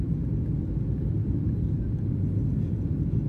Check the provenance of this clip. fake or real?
real